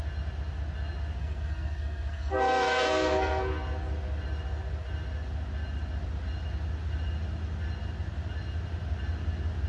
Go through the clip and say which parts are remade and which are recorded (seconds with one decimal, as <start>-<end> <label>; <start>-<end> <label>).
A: 0.0-1.2 recorded; 1.2-3.4 remade; 3.4-9.7 recorded